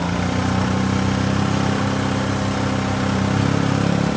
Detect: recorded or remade recorded